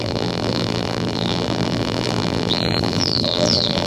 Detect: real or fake fake